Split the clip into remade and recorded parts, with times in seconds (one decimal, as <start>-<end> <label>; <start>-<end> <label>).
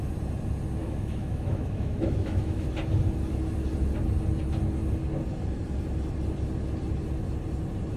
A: 0.0-0.8 recorded; 0.8-2.7 remade; 2.7-8.0 recorded